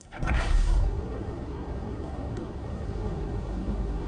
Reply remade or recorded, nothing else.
remade